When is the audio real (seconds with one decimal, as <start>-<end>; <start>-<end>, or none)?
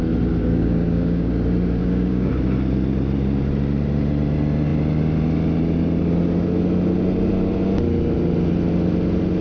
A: 0.0-0.4; 1.3-1.8; 2.3-9.4